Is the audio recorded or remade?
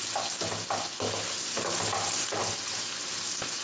recorded